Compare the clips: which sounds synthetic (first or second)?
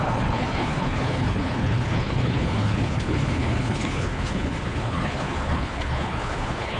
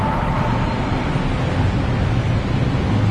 first